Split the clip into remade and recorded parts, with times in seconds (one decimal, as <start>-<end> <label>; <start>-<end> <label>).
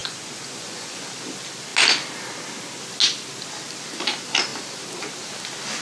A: 0.0-1.0 remade; 1.0-5.8 recorded